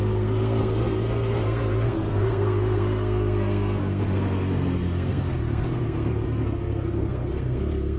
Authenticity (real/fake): fake